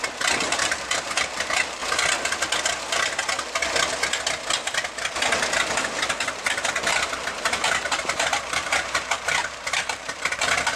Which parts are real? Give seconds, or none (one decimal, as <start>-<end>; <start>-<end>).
0.0-0.5; 1.8-6.9